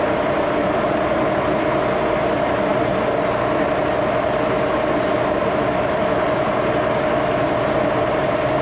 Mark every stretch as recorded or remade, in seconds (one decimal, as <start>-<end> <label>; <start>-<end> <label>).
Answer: 0.0-8.6 recorded